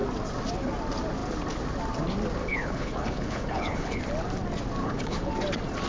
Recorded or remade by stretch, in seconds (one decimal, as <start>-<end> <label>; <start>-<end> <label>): 0.0-2.4 recorded; 2.4-4.0 remade; 4.0-4.8 recorded; 4.8-5.3 remade; 5.3-5.9 recorded